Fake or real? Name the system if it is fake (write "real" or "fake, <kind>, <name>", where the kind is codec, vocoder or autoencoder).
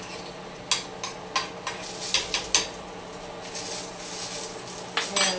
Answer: real